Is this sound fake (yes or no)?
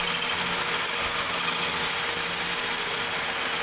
no